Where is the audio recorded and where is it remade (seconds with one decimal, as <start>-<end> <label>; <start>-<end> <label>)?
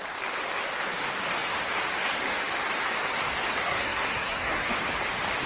0.0-3.6 recorded; 3.6-4.7 remade; 4.7-5.5 recorded